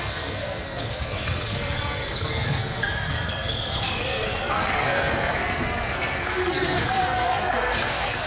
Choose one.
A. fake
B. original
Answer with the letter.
A